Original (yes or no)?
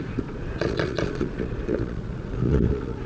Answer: no